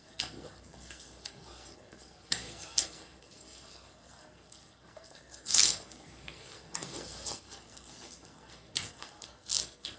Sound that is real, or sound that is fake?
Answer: fake